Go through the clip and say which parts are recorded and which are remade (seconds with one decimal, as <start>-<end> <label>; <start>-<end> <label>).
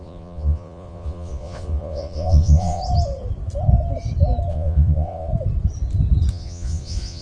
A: 0.0-2.8 remade; 2.8-4.5 recorded; 4.5-5.3 remade; 5.3-6.3 recorded; 6.3-7.2 remade